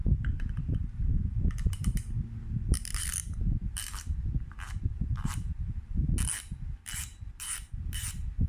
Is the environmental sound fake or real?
fake